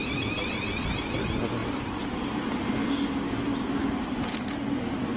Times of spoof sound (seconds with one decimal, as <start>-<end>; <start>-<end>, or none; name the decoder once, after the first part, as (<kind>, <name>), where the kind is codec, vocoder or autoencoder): none